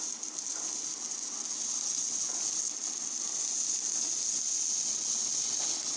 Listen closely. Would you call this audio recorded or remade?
recorded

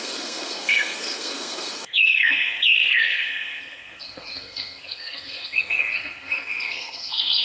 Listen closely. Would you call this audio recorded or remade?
remade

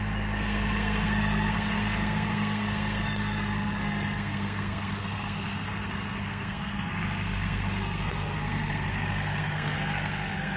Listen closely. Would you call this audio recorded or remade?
remade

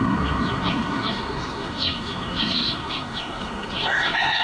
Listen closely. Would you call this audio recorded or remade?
remade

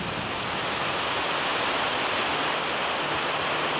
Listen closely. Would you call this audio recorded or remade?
recorded